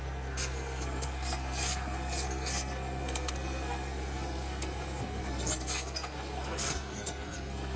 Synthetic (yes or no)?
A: yes